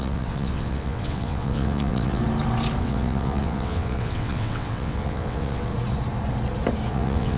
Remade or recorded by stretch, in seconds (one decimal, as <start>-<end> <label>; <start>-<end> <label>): 0.0-2.2 remade; 2.2-2.8 recorded; 2.8-5.7 remade; 5.7-6.9 recorded; 6.9-7.4 remade